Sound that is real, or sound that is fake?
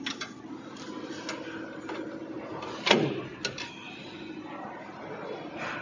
real